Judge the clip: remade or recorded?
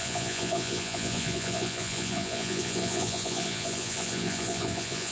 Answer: remade